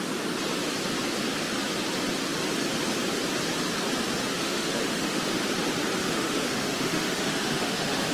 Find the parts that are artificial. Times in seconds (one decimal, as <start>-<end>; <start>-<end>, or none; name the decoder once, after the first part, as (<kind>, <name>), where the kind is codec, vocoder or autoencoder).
4.3-5.4 (autoencoder, DAC-VAE); 6.0-8.1

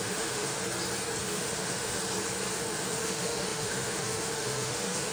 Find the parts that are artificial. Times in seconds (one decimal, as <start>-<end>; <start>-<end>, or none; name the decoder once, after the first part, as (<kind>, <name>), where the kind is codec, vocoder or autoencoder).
0.0-0.6 (autoencoder, DAC-VAE); 1.2-2.0; 2.5-5.1

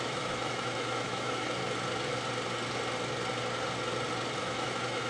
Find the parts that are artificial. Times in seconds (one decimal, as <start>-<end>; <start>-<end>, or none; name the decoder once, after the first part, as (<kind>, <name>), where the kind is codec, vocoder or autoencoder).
0.0-1.6 (autoencoder, DAC-VAE); 4.4-5.1

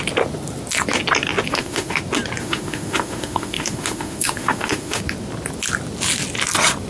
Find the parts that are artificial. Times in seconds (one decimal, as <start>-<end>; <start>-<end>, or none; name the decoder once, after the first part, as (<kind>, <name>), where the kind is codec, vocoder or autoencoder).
1.5-2.0 (autoencoder, DAC-VAE); 2.4-5.0

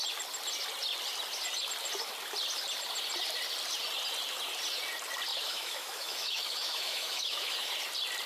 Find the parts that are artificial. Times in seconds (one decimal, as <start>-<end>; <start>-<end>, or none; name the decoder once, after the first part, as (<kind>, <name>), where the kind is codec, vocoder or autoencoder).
5.3-7.7 (autoencoder, DAC-VAE)

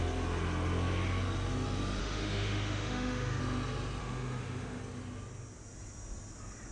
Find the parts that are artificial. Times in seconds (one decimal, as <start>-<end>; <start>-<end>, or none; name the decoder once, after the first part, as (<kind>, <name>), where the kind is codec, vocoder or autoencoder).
2.0-3.4 (autoencoder, DAC-VAE); 4.0-4.8